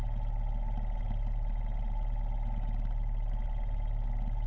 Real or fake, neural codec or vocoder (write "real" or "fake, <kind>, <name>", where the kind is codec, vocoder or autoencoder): real